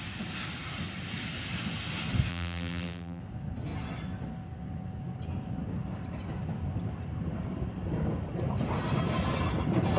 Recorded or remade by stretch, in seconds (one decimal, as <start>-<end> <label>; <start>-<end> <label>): 0.0-2.3 recorded; 2.3-3.2 remade; 3.2-10.0 recorded